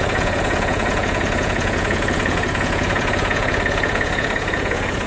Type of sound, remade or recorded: remade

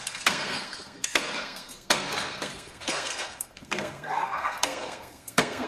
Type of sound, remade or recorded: remade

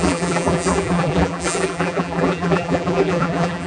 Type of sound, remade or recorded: remade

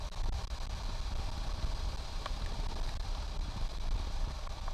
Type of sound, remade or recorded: recorded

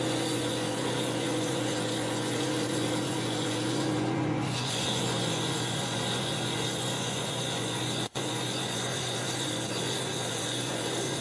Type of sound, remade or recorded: remade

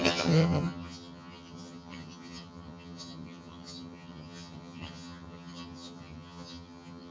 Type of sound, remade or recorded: remade